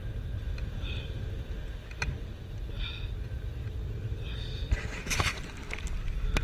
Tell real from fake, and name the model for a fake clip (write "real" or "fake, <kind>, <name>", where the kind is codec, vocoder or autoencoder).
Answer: real